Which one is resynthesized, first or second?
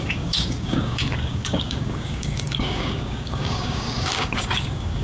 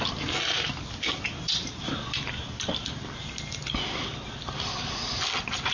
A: first